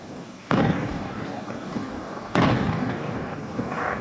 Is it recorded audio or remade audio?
remade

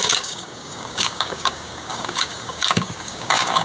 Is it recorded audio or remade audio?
remade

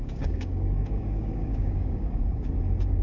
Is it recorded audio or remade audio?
remade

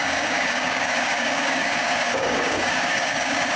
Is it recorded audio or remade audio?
remade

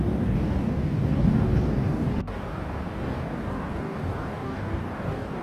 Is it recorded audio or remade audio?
remade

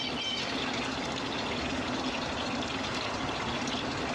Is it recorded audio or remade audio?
recorded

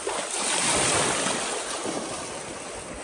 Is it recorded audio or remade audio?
recorded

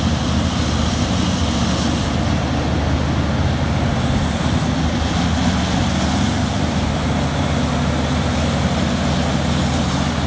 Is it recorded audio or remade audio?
recorded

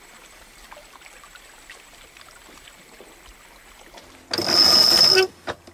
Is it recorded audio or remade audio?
recorded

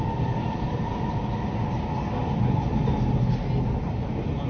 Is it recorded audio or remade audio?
recorded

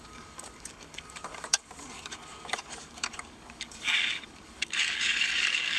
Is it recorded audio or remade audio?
remade